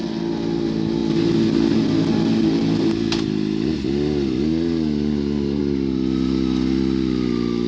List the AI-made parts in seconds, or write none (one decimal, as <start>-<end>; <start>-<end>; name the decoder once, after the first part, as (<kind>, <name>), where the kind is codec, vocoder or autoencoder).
none